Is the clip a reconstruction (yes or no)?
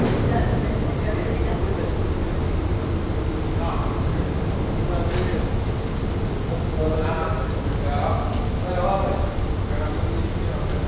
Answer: no